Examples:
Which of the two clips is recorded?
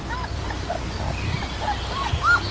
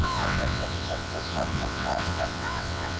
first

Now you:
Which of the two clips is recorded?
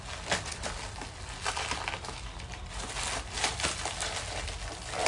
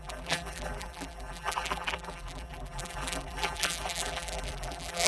first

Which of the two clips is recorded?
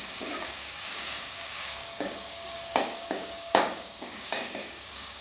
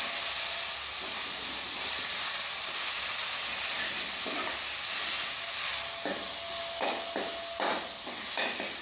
second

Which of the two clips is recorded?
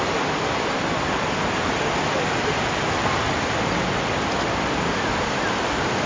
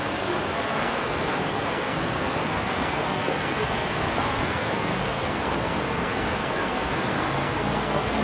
first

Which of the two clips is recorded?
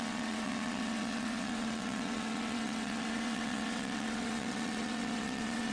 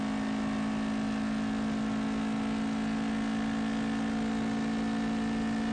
second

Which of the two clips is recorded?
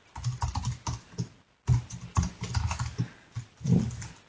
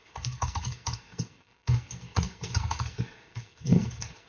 first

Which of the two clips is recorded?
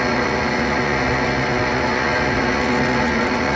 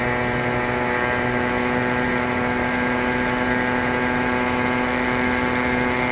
second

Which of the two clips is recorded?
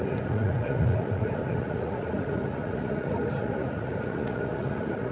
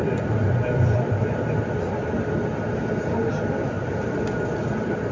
second